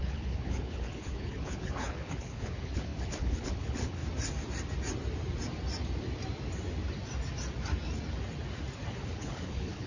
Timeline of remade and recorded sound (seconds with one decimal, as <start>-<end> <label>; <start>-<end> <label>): 0.0-4.0 remade; 4.0-8.9 recorded; 8.9-9.9 remade